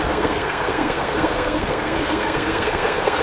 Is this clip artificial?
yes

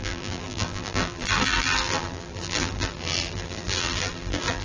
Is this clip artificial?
yes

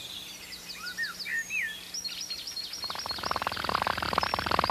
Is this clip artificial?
no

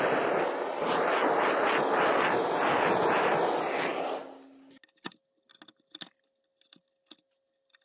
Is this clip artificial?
no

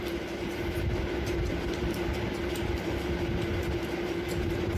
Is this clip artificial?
no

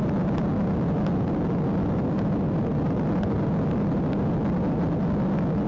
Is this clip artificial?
no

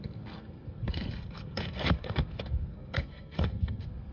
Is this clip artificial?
yes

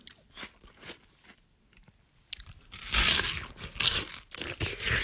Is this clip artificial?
no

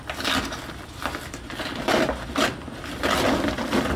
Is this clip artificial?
no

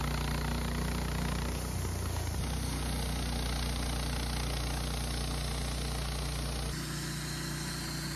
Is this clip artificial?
no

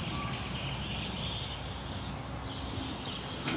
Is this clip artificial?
no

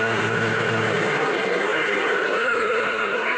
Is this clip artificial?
yes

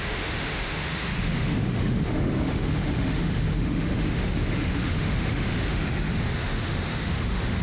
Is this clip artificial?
yes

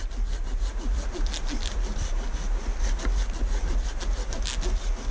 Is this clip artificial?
no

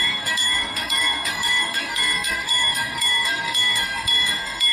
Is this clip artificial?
yes